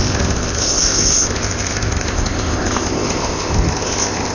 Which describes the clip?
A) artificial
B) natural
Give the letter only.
A